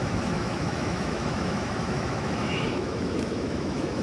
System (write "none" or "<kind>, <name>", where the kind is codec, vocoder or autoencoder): autoencoder, DAC-VAE